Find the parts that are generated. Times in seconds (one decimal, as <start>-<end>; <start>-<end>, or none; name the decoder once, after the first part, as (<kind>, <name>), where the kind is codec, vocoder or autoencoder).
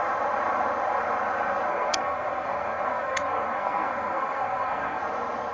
1.7-5.0 (codec, SNAC)